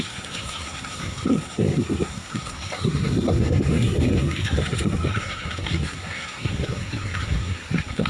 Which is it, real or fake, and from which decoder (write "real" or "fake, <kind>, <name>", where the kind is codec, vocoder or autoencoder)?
fake, codec, SNAC